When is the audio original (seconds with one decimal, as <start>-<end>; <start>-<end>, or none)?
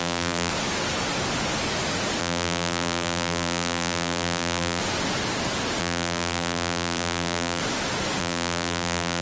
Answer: 0.5-2.2; 4.8-5.8; 7.6-8.2